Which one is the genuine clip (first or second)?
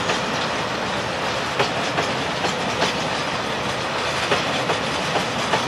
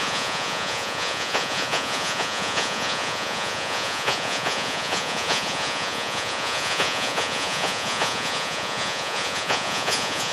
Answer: first